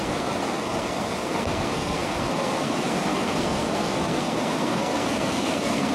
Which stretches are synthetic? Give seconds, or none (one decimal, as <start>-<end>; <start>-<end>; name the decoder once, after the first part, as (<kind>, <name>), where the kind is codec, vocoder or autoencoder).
0.0-5.9 (codec, SNAC)